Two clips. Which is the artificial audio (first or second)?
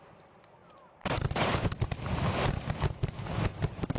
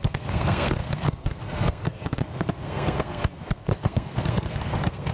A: second